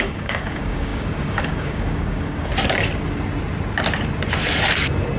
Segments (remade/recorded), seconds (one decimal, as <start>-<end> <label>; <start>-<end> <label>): 0.0-2.5 remade; 2.5-5.2 recorded